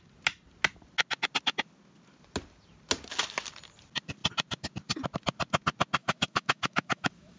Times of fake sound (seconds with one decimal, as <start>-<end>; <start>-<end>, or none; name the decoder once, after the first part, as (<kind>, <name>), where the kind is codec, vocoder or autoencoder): 6.0-7.4 (autoencoder, DAC-VAE)